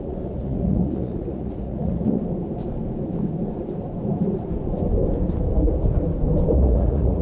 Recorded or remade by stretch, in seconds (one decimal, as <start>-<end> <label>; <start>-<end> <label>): 0.0-2.2 remade; 2.2-6.5 recorded; 6.5-7.2 remade